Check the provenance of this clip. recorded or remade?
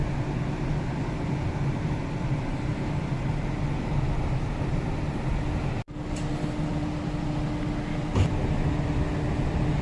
recorded